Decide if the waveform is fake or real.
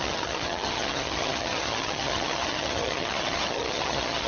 fake